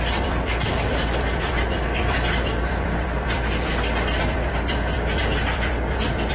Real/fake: fake